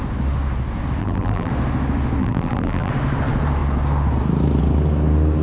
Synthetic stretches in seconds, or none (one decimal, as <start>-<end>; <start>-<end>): 1.0-1.5; 2.2-2.9